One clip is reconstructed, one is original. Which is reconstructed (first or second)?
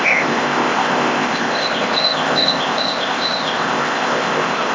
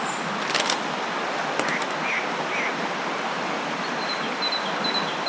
first